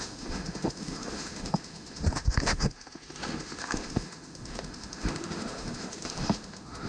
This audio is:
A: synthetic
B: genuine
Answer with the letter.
A